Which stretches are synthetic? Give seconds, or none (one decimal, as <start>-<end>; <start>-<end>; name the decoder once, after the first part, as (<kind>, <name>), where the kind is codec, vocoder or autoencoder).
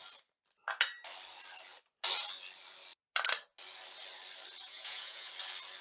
4.6-5.3 (vocoder, Vocos)